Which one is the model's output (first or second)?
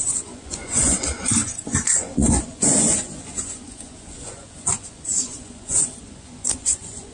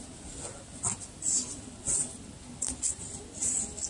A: first